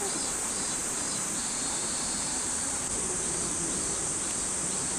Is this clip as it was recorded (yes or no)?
no